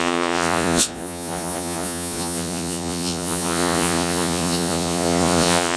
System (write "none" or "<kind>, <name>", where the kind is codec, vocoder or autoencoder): vocoder, Vocos